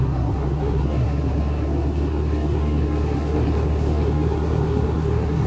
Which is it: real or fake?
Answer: fake